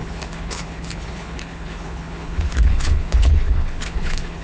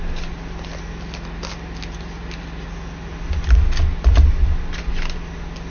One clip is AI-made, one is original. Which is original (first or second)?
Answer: second